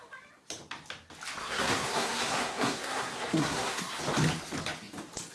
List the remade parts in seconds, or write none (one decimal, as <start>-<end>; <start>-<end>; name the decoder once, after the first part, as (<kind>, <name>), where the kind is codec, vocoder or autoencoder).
1.4-4.0 (codec, SNAC)